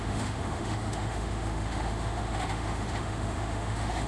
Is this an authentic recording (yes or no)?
no